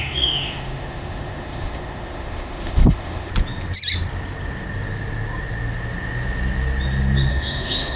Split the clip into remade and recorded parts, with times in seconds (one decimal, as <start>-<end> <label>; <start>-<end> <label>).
0.0-3.3 remade; 3.3-7.3 recorded; 7.3-8.0 remade